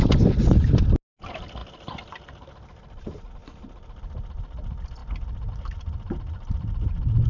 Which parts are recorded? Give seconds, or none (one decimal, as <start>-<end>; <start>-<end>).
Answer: 0.0-7.3